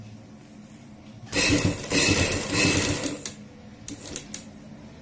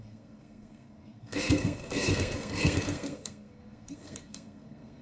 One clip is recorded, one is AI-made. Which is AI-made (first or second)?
second